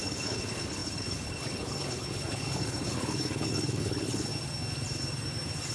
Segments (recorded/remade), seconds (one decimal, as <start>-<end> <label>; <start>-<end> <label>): 0.0-4.3 remade; 4.3-5.7 recorded